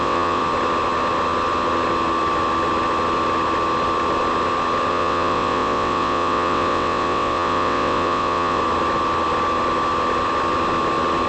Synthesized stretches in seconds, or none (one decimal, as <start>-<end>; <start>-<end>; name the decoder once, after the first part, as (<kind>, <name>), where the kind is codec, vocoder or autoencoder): 0.0-0.4 (vocoder, WaveNeXt); 4.9-8.6